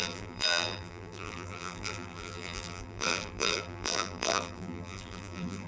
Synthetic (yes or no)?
yes